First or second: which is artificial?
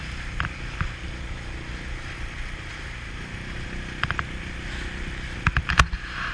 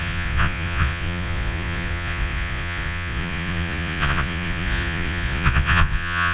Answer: second